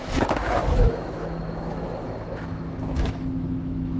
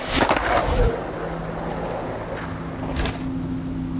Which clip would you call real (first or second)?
second